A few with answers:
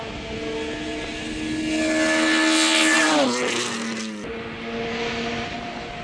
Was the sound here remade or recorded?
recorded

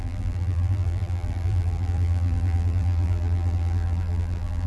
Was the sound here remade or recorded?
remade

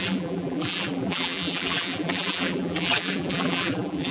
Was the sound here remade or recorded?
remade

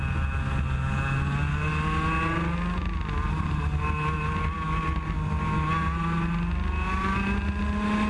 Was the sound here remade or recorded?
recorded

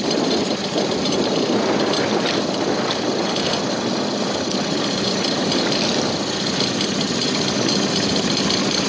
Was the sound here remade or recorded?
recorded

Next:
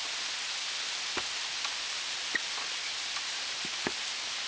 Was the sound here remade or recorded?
recorded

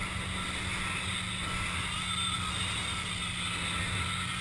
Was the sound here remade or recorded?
recorded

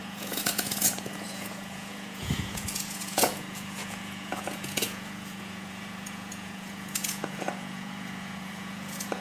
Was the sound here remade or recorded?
remade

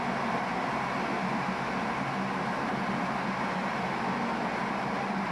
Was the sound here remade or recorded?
recorded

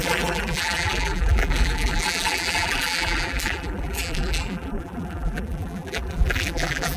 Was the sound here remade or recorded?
remade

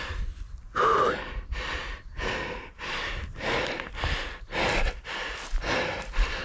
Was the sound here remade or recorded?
recorded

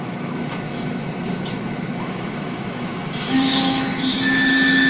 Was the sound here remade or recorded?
remade